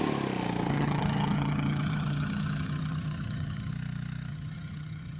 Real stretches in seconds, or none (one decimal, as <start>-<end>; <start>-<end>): 0.0-0.7; 3.7-4.3